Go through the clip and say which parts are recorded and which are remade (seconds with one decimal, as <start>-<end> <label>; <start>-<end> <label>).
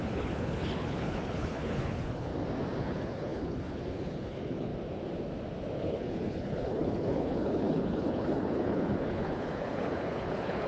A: 0.0-2.3 remade; 2.3-2.8 recorded; 2.8-4.7 remade; 4.7-5.8 recorded; 5.8-10.7 remade